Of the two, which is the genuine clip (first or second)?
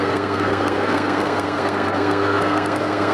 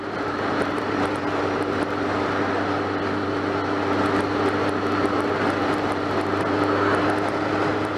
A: second